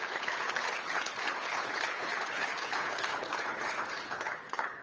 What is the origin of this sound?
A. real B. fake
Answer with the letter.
B